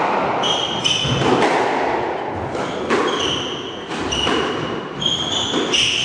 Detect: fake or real real